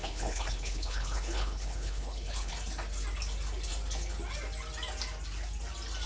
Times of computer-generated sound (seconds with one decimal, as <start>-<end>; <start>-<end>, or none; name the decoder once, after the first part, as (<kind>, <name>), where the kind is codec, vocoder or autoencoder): 0.0-2.5 (codec, HILCodec)